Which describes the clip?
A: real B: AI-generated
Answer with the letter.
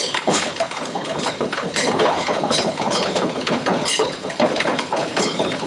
B